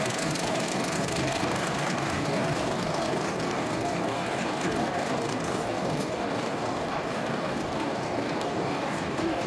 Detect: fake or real fake